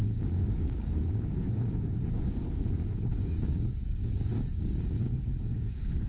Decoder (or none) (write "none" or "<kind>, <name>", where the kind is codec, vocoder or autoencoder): codec, DAC